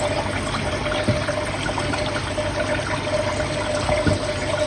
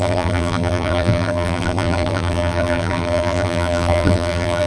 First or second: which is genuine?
first